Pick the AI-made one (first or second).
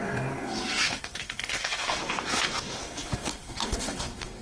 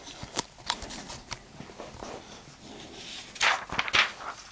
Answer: first